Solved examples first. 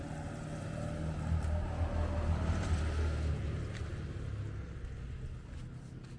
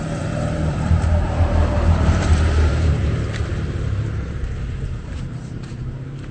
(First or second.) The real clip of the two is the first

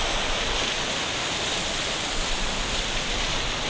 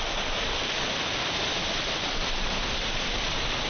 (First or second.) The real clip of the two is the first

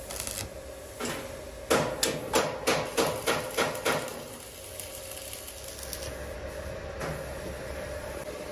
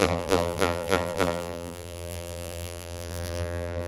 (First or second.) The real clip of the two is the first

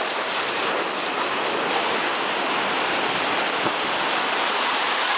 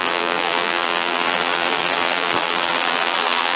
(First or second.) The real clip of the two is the first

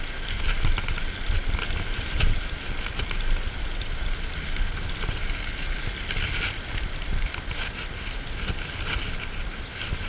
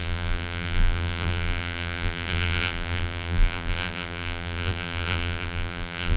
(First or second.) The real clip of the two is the first